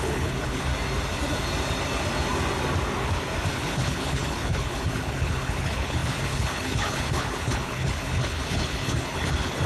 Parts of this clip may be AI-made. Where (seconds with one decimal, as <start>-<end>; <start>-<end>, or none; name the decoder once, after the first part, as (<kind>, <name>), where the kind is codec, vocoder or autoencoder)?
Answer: 0.0-0.7 (codec, HILCodec); 3.5-9.7